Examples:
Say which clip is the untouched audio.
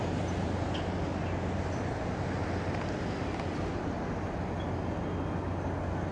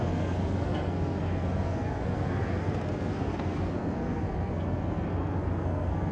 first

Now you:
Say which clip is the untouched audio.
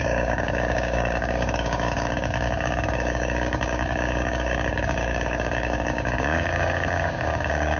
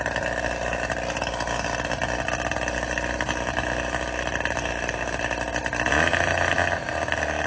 second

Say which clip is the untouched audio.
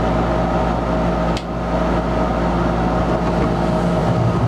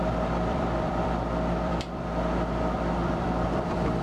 first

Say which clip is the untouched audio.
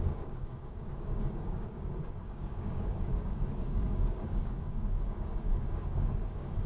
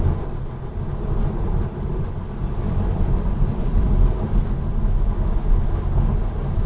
second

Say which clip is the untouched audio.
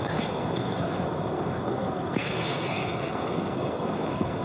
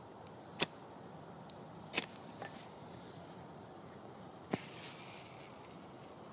second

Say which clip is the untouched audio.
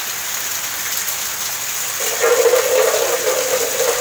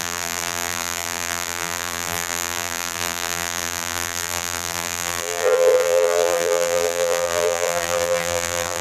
first